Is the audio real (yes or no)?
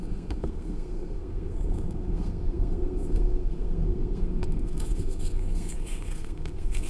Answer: no